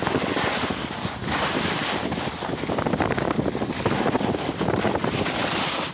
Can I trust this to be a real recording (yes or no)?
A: yes